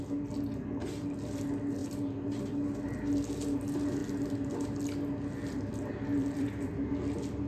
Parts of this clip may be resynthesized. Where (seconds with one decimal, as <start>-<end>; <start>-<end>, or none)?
6.2-6.8